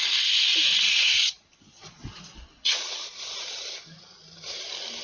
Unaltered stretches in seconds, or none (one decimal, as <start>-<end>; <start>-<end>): 0.0-0.7; 3.7-5.0